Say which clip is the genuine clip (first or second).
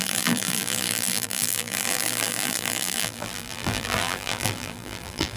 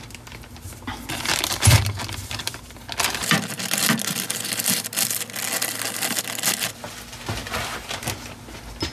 second